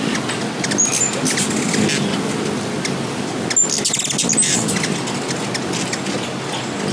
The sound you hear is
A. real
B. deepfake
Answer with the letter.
A